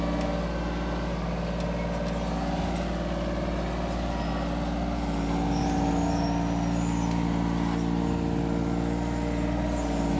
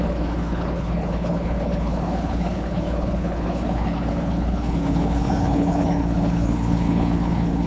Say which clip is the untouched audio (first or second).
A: first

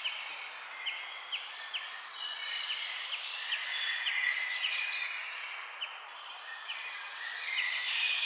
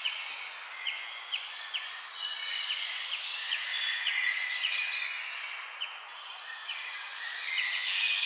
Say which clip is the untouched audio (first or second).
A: first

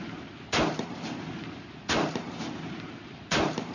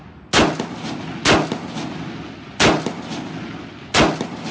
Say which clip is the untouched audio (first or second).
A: second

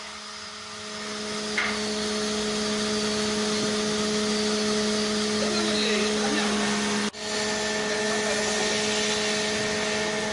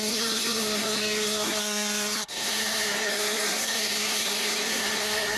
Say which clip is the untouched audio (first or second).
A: first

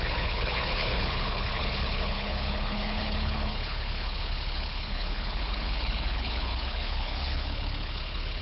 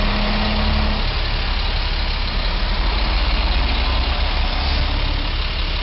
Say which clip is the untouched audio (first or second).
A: second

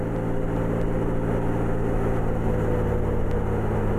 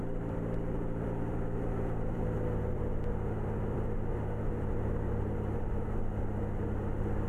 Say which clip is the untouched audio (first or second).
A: first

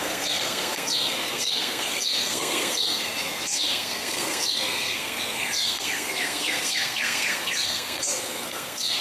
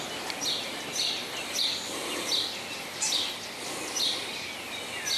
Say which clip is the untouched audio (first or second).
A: second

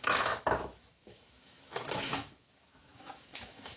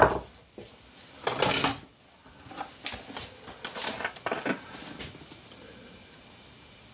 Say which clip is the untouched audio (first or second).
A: second